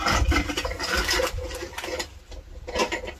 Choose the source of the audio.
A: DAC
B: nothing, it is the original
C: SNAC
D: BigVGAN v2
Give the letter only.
B